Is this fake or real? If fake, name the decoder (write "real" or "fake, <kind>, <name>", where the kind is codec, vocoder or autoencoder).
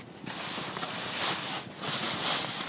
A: real